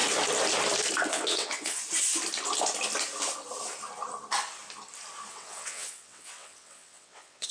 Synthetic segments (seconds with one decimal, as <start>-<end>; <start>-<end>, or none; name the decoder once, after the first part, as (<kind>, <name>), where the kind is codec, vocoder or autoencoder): 1.1-1.8 (vocoder, WaveNeXt); 5.3-7.5